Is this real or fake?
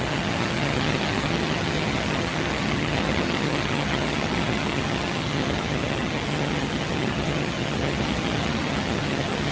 fake